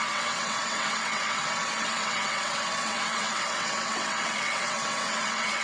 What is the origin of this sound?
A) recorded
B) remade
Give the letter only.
B